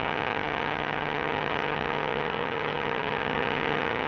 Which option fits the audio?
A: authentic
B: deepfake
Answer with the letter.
B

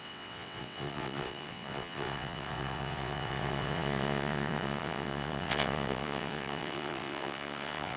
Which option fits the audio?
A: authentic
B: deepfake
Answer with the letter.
B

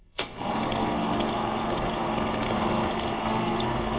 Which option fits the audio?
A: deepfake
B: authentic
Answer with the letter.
A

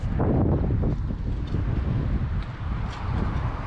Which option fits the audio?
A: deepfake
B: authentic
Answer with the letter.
B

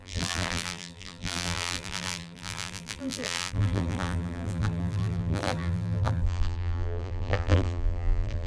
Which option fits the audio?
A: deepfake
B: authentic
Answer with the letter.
A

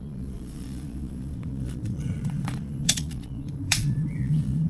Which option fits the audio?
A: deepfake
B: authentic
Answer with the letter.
A